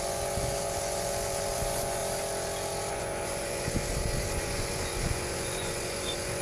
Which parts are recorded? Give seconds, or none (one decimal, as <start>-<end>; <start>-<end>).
2.0-2.9; 3.8-4.3